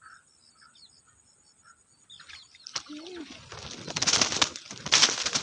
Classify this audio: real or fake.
real